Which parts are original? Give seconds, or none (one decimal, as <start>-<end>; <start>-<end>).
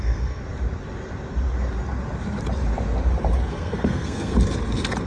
0.4-3.5; 4.3-5.1